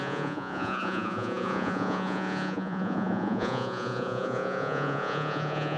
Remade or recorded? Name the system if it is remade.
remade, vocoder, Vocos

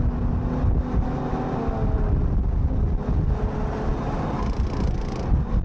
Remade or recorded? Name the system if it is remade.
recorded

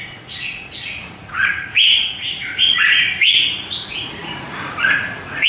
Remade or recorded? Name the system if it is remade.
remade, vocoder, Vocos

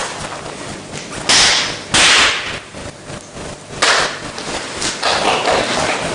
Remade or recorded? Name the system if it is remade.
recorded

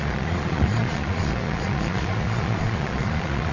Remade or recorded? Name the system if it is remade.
remade, vocoder, Vocos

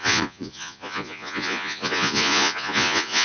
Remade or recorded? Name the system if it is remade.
remade, vocoder, Vocos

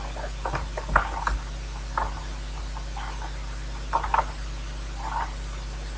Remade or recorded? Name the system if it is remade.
recorded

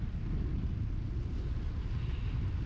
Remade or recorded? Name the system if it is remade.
recorded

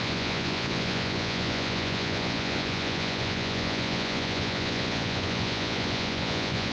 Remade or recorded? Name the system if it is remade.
remade, vocoder, Vocos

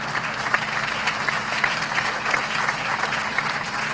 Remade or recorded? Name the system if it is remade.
recorded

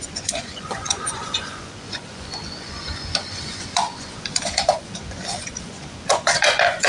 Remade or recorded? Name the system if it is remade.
remade, vocoder, Vocos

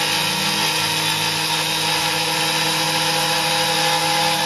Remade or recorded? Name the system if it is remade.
recorded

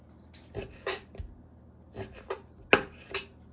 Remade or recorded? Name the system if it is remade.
recorded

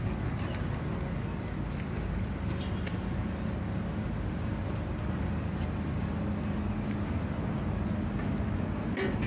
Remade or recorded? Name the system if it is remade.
recorded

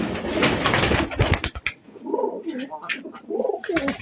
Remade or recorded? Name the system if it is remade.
recorded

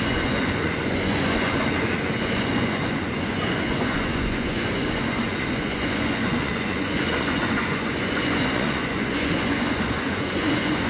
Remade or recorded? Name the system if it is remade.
remade, vocoder, Vocos